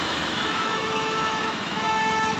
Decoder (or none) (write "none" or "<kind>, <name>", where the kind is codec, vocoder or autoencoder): autoencoder, DAC-VAE